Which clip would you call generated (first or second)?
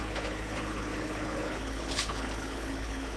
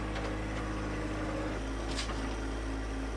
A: first